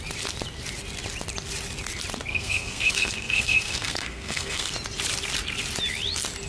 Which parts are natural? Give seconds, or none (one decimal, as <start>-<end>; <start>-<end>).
0.0-2.3; 4.7-6.5